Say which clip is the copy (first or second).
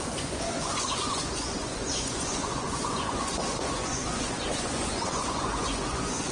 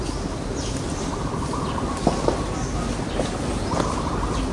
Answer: first